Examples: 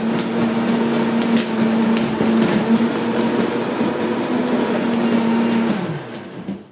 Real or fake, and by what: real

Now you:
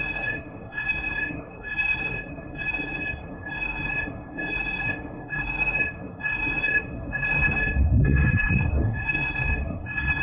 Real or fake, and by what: fake, codec, SNAC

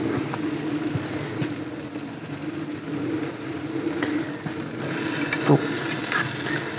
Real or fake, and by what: real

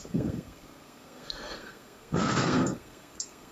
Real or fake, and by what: fake, codec, SNAC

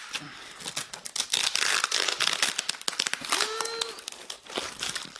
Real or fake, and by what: real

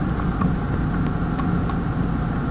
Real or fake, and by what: real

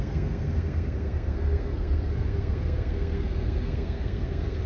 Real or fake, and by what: fake, codec, SNAC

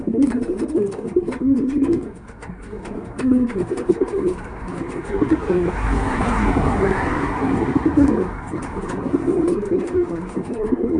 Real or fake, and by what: fake, codec, SNAC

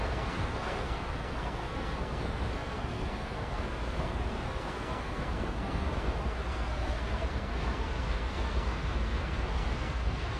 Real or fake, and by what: fake, codec, SNAC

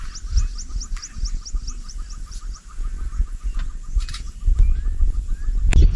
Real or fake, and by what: real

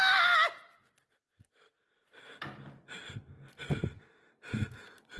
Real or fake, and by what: real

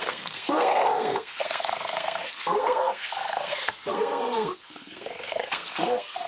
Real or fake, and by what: fake, codec, SNAC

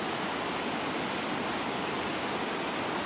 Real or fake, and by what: real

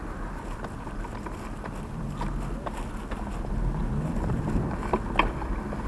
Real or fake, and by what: real